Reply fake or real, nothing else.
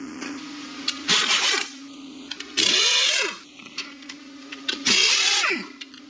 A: fake